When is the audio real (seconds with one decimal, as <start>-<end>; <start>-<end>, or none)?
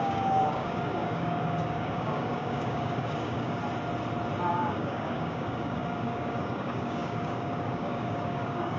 3.6-4.5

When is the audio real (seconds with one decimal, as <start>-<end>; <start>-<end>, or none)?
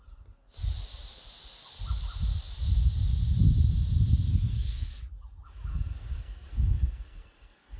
0.0-4.3; 5.0-5.7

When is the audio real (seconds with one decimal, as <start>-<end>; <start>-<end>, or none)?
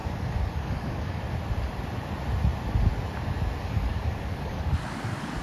1.2-3.6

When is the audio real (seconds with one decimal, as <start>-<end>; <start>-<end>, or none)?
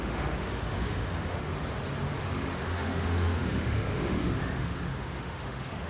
1.5-2.2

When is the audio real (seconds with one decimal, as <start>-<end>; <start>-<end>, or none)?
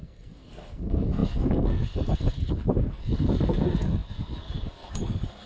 none